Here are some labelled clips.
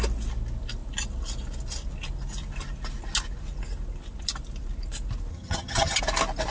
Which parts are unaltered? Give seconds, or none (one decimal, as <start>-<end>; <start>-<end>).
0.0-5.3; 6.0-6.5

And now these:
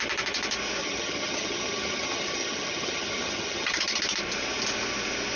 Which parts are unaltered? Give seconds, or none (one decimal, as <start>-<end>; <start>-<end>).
0.0-0.8; 4.0-5.4

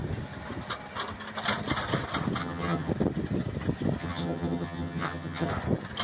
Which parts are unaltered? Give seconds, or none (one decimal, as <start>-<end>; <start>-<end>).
0.0-2.4; 2.9-4.0; 5.5-6.0

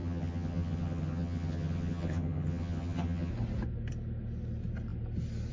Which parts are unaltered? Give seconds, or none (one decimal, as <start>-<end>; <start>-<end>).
3.3-5.5